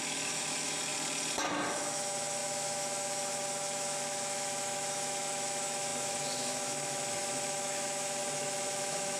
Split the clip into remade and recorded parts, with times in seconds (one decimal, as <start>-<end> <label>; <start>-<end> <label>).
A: 0.0-0.9 remade; 0.9-1.7 recorded; 1.7-9.2 remade